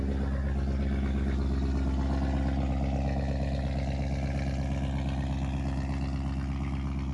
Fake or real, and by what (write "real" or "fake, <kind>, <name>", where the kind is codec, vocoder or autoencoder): real